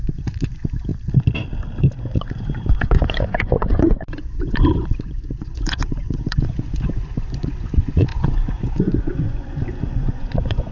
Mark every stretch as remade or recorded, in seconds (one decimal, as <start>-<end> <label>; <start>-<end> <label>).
0.0-0.9 remade; 0.9-1.8 recorded; 1.8-10.7 remade